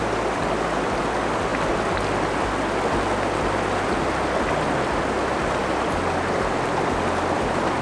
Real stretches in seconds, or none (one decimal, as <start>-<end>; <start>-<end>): 0.0-7.8